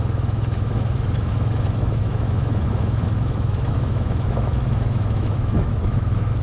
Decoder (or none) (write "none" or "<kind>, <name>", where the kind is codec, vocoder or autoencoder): autoencoder, DAC-VAE